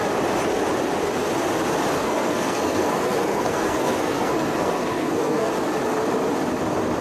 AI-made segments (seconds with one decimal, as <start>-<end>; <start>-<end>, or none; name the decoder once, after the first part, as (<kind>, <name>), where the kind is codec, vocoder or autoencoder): 2.0-5.5 (codec, SNAC)